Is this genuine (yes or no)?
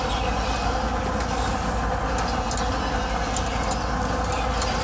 yes